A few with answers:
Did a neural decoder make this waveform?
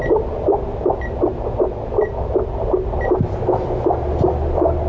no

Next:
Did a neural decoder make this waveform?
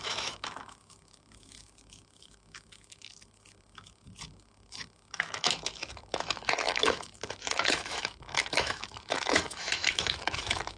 yes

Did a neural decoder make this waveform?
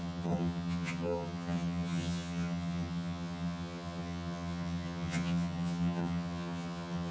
yes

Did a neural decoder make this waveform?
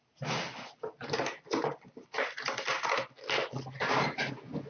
no